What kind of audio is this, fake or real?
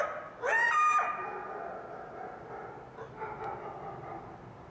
real